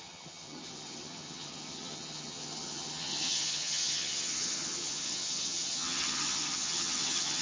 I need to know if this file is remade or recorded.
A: remade